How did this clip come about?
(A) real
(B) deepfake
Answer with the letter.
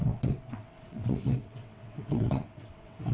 B